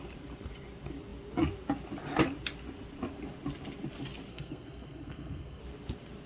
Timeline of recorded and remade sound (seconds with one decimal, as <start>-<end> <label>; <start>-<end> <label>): 0.0-4.3 recorded; 4.3-5.6 remade; 5.6-6.3 recorded